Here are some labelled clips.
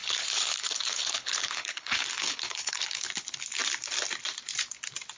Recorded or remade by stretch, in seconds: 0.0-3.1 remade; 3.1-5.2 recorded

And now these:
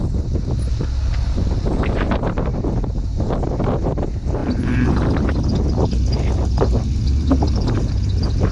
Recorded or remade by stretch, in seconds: 0.0-8.5 recorded

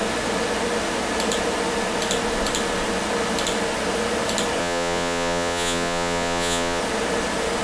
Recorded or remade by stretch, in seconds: 0.0-4.6 recorded; 4.6-6.8 remade; 6.8-7.6 recorded

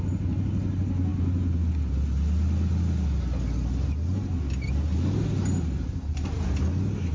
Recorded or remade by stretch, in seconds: 0.0-6.1 recorded; 6.1-6.6 remade; 6.6-7.1 recorded

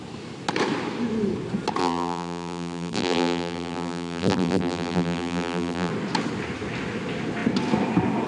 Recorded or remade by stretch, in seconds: 0.0-1.8 recorded; 1.8-5.9 remade; 5.9-8.3 recorded

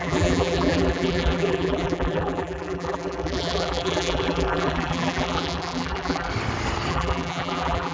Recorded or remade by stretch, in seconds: 0.0-6.3 remade; 6.3-6.9 recorded; 6.9-7.9 remade